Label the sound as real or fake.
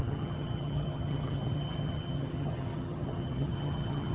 fake